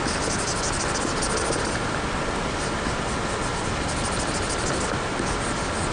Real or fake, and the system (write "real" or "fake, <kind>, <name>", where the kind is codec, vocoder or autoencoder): real